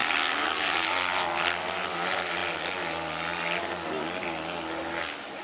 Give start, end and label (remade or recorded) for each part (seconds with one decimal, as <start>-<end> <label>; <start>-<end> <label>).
0.0-5.4 recorded